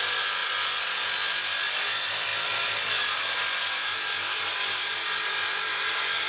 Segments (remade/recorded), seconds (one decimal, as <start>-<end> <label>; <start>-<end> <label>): 0.0-6.3 recorded